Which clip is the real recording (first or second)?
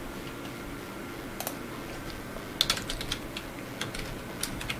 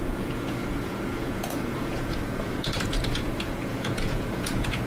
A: first